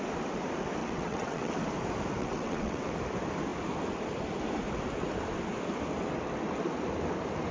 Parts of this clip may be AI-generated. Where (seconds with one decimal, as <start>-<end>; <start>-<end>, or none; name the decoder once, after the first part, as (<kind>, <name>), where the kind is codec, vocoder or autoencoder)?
0.8-1.5 (vocoder, WaveNeXt); 2.2-2.9